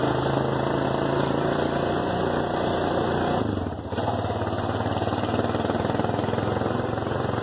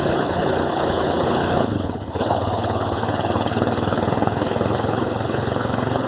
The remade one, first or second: second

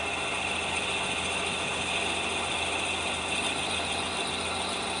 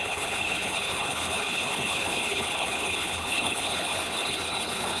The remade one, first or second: second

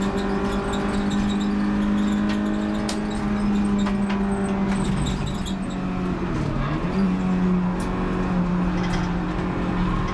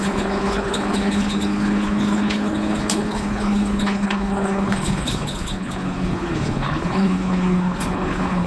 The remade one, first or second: second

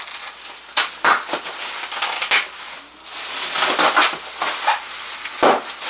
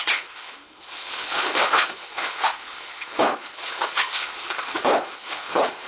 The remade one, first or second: second